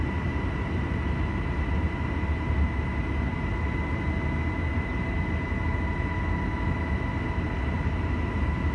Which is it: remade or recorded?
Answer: recorded